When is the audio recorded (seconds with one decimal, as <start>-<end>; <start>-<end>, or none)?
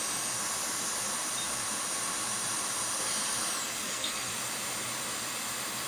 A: 0.0-3.7; 4.3-5.9